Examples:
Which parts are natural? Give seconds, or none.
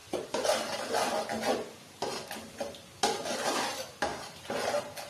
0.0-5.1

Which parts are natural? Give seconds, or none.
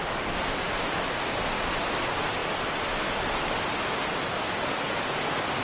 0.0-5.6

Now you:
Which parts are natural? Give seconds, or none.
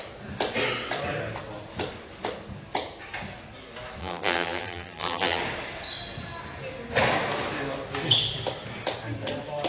0.0-4.0; 5.4-9.7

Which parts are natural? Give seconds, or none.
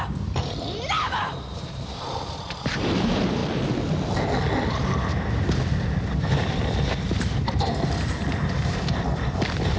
3.4-4.7